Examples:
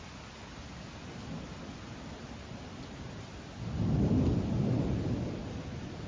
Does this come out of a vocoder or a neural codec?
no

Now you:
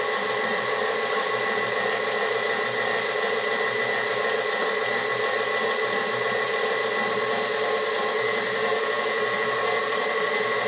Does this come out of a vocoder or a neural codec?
no